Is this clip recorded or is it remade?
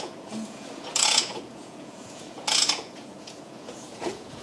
remade